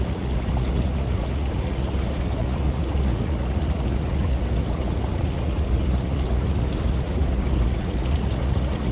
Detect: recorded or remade remade